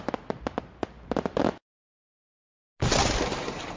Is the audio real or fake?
real